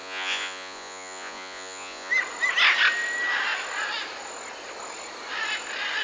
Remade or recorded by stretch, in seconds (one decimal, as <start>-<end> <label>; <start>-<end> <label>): 0.0-2.1 remade; 2.1-6.0 recorded